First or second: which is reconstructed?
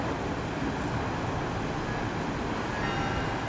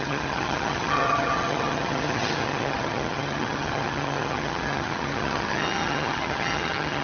second